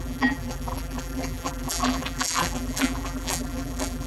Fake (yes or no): yes